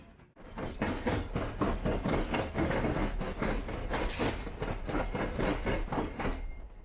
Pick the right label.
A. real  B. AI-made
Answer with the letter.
A